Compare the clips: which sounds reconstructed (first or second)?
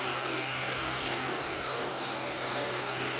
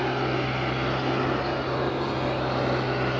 first